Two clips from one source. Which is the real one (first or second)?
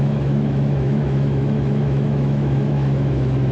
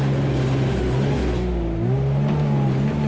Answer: second